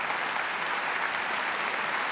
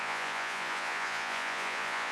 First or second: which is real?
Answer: first